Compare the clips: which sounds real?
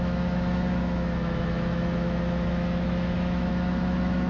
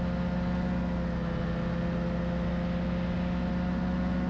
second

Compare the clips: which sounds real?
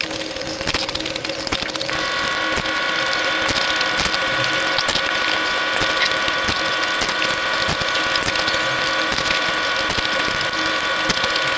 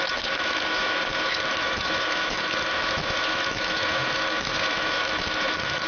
first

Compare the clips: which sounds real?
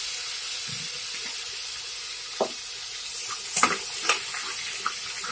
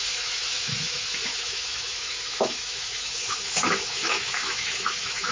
first